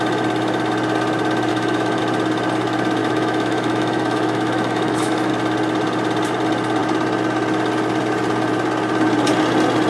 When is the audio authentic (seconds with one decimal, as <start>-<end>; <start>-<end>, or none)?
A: 0.0-1.5; 2.0-3.0; 5.3-9.9